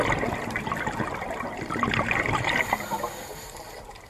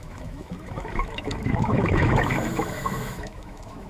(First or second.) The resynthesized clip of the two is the second